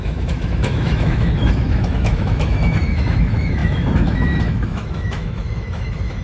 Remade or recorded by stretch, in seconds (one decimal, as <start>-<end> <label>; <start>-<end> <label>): 0.0-6.2 remade